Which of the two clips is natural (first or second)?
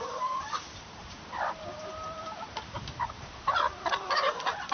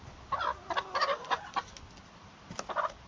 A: second